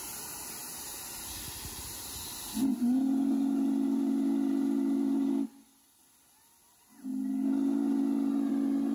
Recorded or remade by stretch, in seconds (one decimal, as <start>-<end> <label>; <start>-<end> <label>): 0.0-8.9 recorded